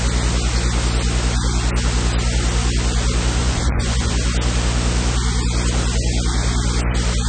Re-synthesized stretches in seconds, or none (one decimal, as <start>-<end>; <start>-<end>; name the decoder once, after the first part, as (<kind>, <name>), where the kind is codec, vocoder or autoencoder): 3.4-4.1 (vocoder, Vocos)